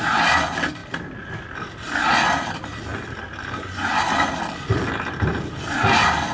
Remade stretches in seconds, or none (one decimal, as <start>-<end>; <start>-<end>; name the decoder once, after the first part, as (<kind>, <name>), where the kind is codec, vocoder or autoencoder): none